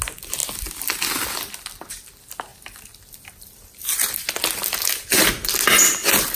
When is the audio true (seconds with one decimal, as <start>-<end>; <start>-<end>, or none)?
0.0-6.4